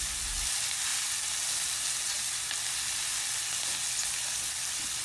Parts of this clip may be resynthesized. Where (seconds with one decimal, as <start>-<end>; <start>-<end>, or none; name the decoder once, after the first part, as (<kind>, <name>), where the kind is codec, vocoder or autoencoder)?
none

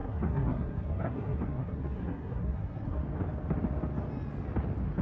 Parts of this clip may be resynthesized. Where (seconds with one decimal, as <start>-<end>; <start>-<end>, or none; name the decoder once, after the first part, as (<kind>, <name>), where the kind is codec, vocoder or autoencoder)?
0.0-3.0 (codec, SNAC)

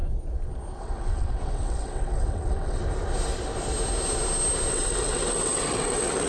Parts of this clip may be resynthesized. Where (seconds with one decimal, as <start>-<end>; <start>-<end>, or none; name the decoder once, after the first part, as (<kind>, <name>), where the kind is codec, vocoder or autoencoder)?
0.8-2.8 (vocoder, WaveNeXt); 4.7-6.3

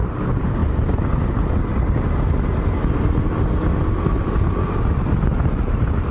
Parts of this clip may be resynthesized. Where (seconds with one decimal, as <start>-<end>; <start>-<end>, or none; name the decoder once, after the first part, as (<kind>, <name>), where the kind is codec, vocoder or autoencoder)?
none

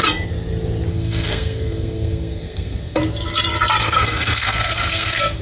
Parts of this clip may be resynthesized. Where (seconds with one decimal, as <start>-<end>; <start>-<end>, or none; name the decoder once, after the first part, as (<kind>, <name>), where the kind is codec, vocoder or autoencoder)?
0.9-3.0 (codec, SNAC); 3.8-5.4

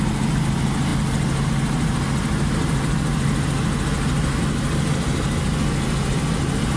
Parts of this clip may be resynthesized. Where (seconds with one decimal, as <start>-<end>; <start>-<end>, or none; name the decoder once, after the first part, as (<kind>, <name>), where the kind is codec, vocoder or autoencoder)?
none

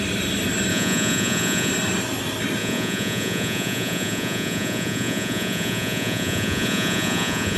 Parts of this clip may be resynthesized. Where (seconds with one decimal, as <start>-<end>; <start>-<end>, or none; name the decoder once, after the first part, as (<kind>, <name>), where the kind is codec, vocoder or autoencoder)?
0.7-1.7 (vocoder, Vocos); 2.6-7.6

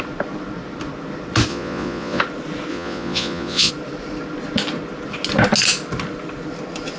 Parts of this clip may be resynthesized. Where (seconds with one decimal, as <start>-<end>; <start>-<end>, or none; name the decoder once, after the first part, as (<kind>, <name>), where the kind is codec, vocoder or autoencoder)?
1.5-2.2 (vocoder, Vocos); 2.7-3.7